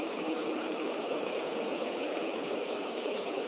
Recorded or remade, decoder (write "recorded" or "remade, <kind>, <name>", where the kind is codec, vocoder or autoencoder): remade, codec, HILCodec